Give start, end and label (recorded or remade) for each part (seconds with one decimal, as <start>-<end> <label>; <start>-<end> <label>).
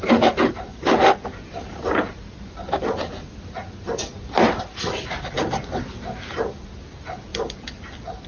0.0-8.3 recorded